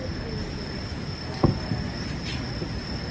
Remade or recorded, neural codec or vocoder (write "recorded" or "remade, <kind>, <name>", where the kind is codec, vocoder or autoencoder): recorded